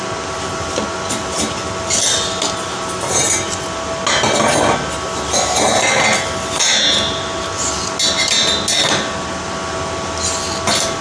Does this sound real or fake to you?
real